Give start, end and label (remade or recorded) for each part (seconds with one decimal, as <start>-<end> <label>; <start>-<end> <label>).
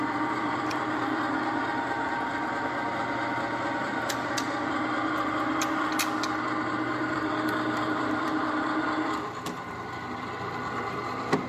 0.0-5.9 remade; 5.9-7.0 recorded; 7.0-11.5 remade